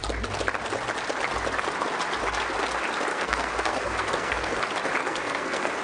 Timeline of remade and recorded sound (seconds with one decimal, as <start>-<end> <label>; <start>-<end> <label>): 0.0-3.1 recorded; 3.1-4.6 remade; 4.6-5.0 recorded; 5.0-5.8 remade